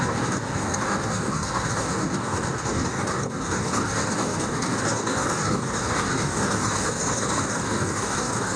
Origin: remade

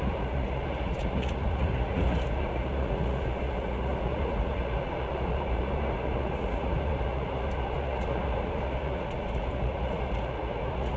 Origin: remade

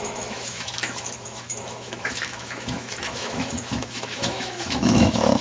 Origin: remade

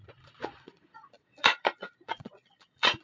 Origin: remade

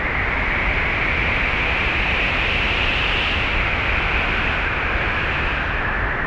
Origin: recorded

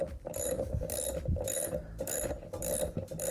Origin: remade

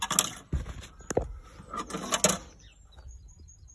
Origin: recorded